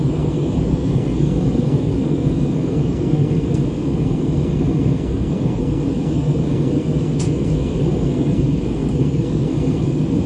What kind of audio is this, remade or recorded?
remade